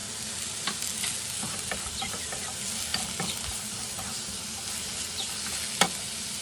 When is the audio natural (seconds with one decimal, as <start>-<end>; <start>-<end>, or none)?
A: 0.0-6.4